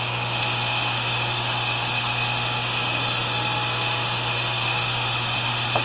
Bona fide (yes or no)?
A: no